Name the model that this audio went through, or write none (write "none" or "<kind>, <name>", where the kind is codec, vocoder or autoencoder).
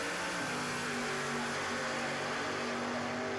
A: none